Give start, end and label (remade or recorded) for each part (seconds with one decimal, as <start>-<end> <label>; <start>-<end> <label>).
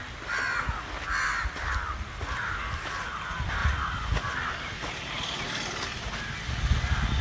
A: 0.0-7.2 recorded